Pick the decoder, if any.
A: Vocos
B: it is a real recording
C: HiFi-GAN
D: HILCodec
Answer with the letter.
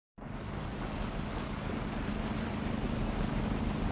B